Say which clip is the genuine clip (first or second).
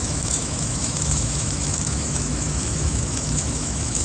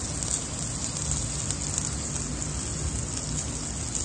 second